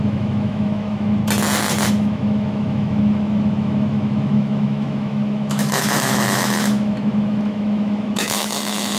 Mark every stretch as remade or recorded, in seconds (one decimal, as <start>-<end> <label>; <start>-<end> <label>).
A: 0.0-1.2 remade; 1.2-1.9 recorded; 1.9-9.0 remade